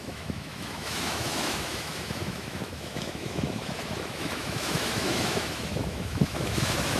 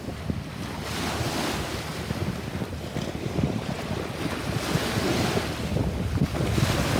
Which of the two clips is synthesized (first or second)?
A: first